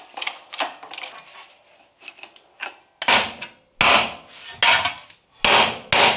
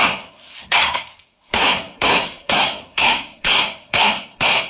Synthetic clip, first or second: second